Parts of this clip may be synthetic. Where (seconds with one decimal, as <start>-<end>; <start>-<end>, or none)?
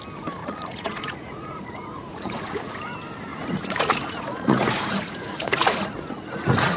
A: 0.4-2.8; 3.3-6.8